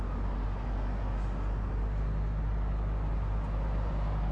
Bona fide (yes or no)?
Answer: yes